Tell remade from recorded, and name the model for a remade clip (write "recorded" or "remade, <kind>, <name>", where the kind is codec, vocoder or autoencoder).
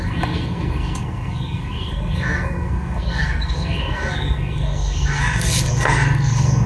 remade, codec, SNAC